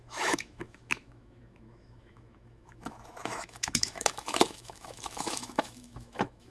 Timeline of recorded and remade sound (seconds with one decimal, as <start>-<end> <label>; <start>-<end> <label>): 0.0-6.5 remade